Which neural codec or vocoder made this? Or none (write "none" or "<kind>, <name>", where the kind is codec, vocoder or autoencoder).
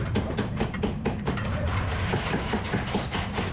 vocoder, BigVGAN v2